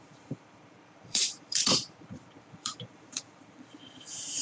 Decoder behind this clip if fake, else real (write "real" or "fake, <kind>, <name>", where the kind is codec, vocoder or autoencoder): fake, vocoder, BigVGAN v2